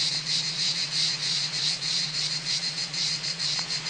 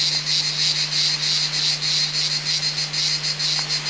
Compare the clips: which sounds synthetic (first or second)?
first